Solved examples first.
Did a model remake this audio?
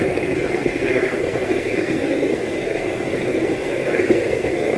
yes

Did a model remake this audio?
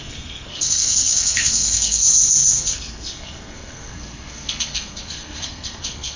yes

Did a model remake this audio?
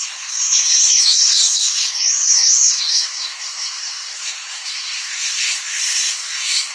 yes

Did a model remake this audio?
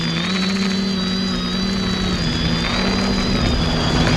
no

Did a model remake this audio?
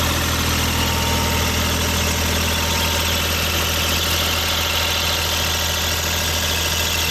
no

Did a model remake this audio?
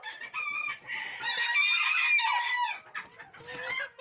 no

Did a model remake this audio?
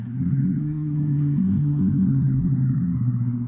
yes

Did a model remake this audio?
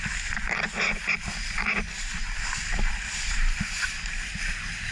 no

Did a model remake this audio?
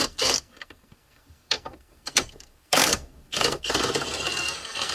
yes